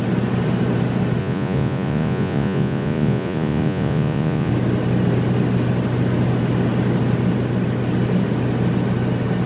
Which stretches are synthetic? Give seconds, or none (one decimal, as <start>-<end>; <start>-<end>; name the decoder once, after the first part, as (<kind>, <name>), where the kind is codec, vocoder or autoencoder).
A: 1.2-4.5 (vocoder, Vocos)